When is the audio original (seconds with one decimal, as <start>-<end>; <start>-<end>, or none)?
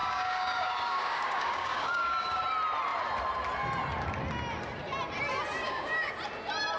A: 2.4-5.6; 6.1-6.8